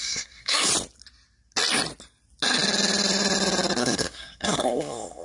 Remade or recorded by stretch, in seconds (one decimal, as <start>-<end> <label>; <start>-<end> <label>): 0.0-0.7 remade; 0.7-3.8 recorded; 3.8-5.2 remade